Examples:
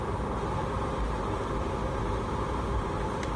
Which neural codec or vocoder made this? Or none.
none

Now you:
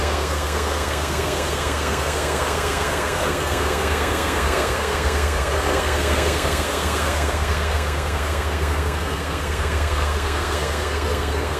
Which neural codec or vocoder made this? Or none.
codec, SNAC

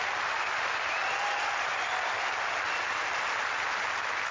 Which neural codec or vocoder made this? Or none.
none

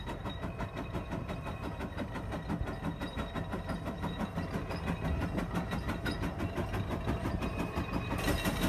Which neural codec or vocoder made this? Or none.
none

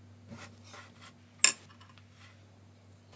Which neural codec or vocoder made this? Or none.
none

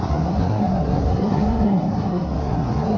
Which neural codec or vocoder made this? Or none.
codec, SNAC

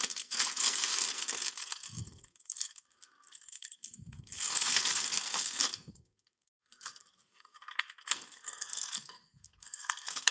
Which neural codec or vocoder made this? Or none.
codec, SNAC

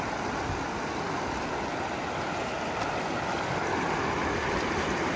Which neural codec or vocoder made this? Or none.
none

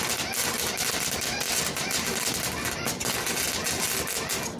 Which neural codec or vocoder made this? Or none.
none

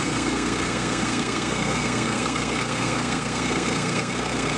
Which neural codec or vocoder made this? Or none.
codec, SNAC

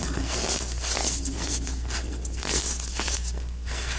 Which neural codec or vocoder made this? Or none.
codec, SNAC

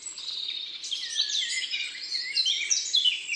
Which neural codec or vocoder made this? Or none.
none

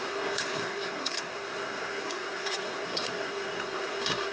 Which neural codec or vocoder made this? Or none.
codec, SNAC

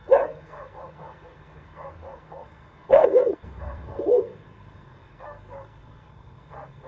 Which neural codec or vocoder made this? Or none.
codec, SNAC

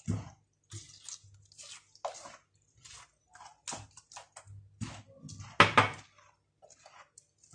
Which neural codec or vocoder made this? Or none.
none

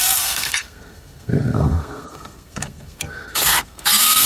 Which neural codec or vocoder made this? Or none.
codec, SNAC